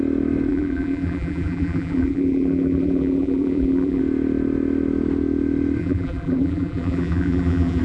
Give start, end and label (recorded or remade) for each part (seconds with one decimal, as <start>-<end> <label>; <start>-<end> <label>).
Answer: 0.0-0.5 recorded; 0.5-4.0 remade; 4.0-5.8 recorded; 5.8-7.8 remade